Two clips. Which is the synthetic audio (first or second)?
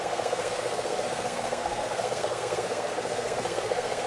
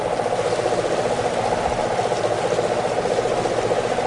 first